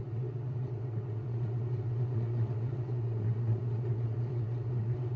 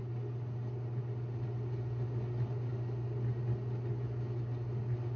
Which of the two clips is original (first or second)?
second